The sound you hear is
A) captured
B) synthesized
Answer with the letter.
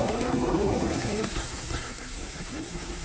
B